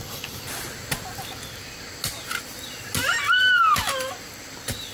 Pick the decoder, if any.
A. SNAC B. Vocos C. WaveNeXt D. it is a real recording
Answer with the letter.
D